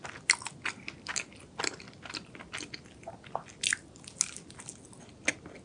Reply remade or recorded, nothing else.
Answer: recorded